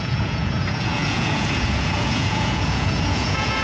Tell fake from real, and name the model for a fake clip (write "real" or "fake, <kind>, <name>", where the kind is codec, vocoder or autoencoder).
fake, vocoder, Vocos